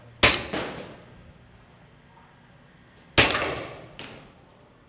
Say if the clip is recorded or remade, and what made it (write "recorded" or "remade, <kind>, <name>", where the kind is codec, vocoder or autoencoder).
recorded